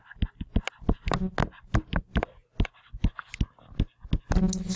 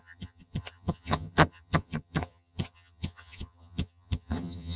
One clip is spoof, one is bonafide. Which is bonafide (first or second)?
first